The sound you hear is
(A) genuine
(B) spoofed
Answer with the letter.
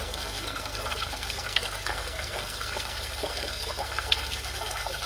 B